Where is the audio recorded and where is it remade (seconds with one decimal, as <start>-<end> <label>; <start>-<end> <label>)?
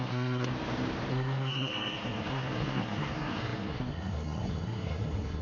0.0-0.5 remade; 0.5-1.1 recorded; 1.1-5.4 remade